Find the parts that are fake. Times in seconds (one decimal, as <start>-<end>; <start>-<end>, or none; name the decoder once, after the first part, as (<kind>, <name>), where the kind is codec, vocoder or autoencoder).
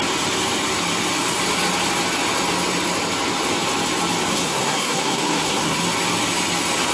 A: 4.3-5.8 (codec, SNAC)